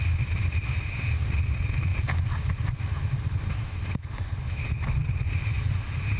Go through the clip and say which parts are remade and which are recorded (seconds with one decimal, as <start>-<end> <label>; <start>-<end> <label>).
0.0-1.9 recorded; 1.9-3.4 remade; 3.4-5.0 recorded; 5.0-5.7 remade; 5.7-6.2 recorded